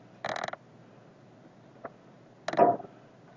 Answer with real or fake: real